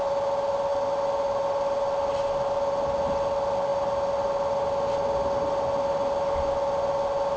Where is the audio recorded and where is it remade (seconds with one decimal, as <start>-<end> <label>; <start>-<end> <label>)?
0.0-0.7 remade; 0.7-1.4 recorded; 1.4-3.7 remade; 3.7-6.5 recorded; 6.5-7.4 remade